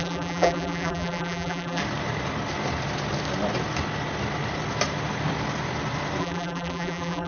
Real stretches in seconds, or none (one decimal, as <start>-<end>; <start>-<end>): 1.8-6.2